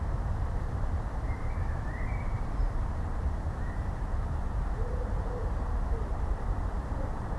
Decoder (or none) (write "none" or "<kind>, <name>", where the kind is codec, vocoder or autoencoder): vocoder, BigVGAN v2